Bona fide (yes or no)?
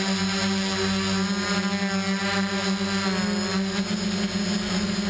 yes